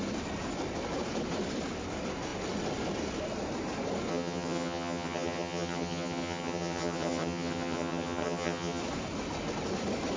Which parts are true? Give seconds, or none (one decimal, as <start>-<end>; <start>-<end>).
0.0-4.1; 8.8-10.2